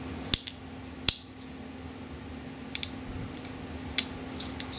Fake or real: real